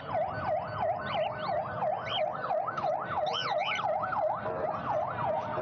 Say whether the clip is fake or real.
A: real